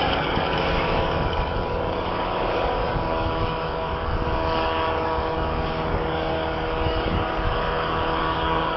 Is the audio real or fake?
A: fake